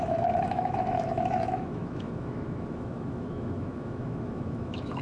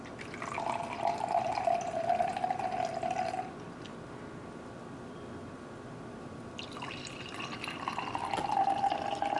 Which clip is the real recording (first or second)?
second